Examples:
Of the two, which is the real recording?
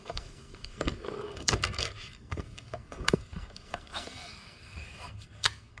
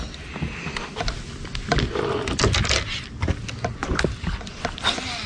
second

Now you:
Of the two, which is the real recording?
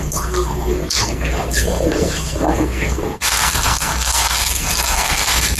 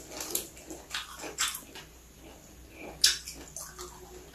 second